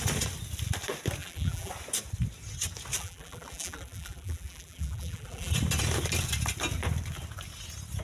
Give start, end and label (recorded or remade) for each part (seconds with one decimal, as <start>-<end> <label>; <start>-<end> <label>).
0.0-1.2 recorded; 1.2-1.7 remade; 1.7-3.0 recorded; 3.0-5.5 remade; 5.5-8.0 recorded